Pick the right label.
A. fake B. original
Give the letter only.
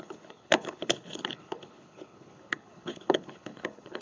A